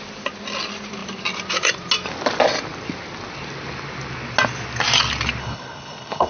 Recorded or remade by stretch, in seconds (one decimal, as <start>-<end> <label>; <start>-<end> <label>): 0.0-5.4 recorded; 5.4-6.3 remade

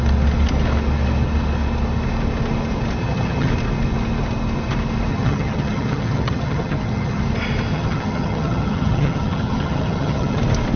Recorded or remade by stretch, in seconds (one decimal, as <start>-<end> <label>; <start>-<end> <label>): 0.0-3.0 recorded; 3.0-3.5 remade; 3.5-5.1 recorded; 5.1-7.2 remade; 7.2-7.7 recorded; 7.7-10.4 remade; 10.4-10.8 recorded